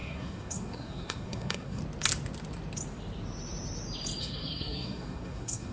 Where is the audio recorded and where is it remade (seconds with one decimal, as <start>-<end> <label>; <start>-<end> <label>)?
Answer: 0.0-1.8 remade; 1.8-4.2 recorded; 4.2-5.7 remade